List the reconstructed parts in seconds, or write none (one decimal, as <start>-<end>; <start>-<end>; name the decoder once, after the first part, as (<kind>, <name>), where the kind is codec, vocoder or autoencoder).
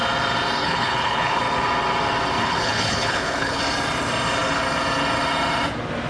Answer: 0.6-1.4 (codec, HILCodec); 2.4-3.6